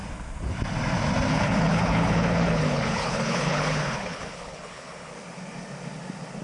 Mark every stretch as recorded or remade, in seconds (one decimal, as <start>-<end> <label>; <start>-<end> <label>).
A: 0.0-1.3 recorded; 1.3-5.1 remade; 5.1-6.4 recorded